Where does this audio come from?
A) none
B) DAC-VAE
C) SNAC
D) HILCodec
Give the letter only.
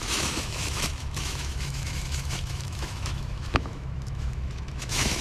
B